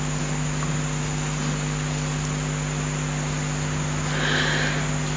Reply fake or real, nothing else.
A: real